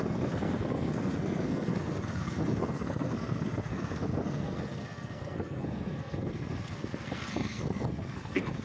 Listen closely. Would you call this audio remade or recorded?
remade